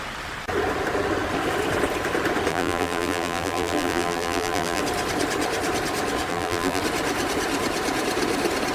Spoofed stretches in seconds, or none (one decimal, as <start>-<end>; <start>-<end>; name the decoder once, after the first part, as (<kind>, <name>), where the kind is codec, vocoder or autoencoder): 2.5-4.8 (vocoder, BigVGAN v2); 6.3-6.8